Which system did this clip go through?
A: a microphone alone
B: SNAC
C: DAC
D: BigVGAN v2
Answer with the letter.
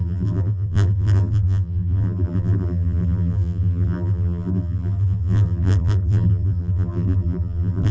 D